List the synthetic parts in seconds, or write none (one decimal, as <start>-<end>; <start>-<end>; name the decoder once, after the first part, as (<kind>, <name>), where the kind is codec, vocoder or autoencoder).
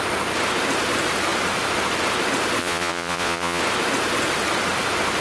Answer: 2.6-3.6 (vocoder, Vocos)